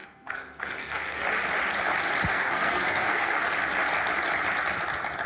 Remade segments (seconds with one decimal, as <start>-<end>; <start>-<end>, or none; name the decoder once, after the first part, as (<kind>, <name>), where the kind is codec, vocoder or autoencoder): 0.0-1.2 (codec, SNAC); 2.3-3.4